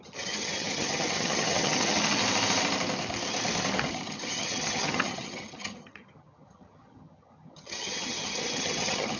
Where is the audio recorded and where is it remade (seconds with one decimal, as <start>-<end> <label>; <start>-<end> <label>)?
0.0-2.2 remade; 2.2-3.9 recorded; 3.9-9.2 remade